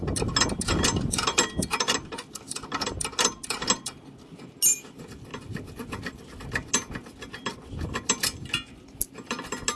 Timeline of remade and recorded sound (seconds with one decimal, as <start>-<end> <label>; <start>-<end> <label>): 0.0-5.3 recorded; 5.3-6.9 remade; 6.9-9.8 recorded